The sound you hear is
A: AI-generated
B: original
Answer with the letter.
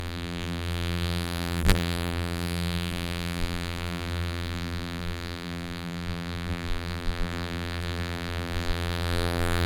A